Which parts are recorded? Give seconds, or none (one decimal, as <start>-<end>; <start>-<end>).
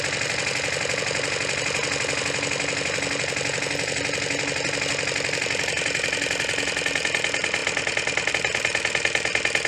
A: 0.0-9.7